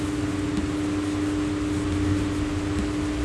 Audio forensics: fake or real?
real